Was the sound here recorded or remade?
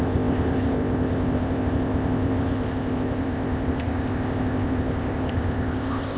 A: remade